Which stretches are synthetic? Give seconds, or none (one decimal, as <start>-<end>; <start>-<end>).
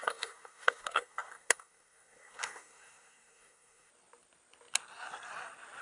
0.0-3.9